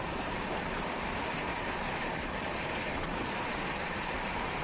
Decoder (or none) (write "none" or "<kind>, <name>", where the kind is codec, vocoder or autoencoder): vocoder, BigVGAN v2